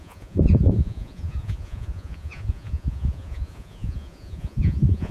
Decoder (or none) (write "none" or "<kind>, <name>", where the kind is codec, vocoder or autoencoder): vocoder, Vocos